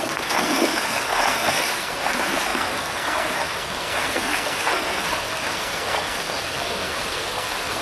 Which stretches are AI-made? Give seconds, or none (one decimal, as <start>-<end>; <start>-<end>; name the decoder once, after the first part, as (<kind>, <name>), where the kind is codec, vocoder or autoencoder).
0.0-7.8 (codec, SNAC)

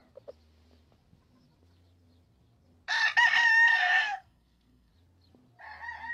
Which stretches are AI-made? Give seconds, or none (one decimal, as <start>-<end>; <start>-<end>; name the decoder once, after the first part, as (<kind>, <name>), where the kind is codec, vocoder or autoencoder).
3.7-4.9 (codec, SNAC)

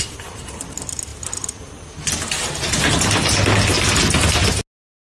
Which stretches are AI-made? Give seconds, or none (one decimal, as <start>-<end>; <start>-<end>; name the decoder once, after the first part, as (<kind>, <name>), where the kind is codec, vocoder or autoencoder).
none

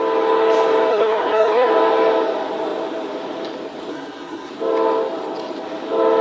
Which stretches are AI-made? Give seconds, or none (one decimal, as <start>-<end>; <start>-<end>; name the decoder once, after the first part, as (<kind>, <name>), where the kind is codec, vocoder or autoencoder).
0.9-1.7 (codec, SNAC); 3.9-4.5

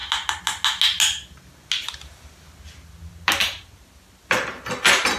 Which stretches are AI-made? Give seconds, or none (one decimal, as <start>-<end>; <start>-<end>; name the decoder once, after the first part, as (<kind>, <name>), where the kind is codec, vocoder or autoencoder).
none

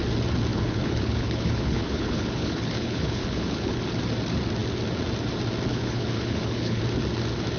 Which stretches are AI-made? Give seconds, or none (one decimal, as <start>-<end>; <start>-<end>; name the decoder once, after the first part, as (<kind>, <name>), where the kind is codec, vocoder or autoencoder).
0.5-3.8 (codec, HILCodec); 5.7-6.8

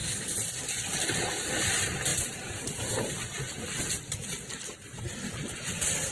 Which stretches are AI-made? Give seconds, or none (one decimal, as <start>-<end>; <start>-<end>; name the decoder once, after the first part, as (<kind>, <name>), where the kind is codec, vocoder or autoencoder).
0.0-0.5 (vocoder, BigVGAN v2)

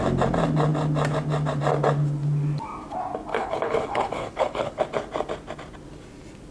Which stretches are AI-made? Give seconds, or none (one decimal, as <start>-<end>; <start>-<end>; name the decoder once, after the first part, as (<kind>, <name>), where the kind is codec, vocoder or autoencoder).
3.3-4.8 (codec, HILCodec)